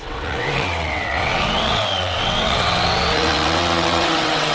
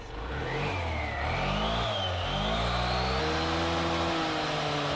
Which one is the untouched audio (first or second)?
second